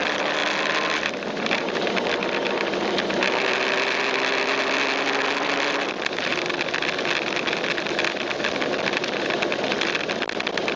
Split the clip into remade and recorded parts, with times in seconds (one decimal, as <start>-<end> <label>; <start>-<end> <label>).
0.0-6.3 remade; 6.3-9.6 recorded; 9.6-10.8 remade